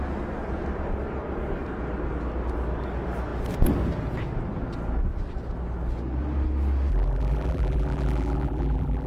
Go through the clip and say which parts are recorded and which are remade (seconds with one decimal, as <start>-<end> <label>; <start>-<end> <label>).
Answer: 0.0-6.9 recorded; 6.9-9.1 remade